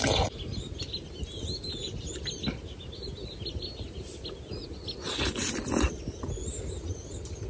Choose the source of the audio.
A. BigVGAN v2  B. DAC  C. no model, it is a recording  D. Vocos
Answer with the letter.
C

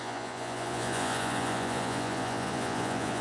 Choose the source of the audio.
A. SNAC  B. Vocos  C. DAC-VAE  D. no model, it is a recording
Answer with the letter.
B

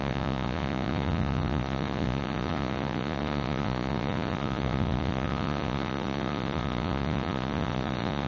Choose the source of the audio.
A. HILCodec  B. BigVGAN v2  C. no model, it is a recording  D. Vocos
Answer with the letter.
D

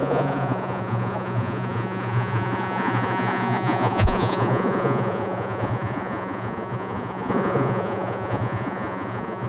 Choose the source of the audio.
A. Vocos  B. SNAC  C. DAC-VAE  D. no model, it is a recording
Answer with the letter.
A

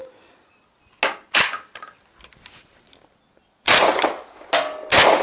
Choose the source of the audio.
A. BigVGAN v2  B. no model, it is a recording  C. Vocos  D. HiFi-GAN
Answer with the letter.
B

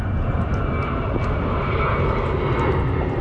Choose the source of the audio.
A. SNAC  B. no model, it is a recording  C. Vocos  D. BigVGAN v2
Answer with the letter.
B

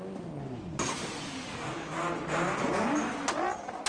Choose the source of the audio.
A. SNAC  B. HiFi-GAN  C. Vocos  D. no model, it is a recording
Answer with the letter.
D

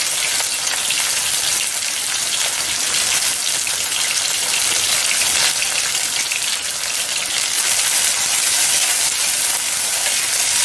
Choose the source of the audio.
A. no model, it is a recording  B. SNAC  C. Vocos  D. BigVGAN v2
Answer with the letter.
A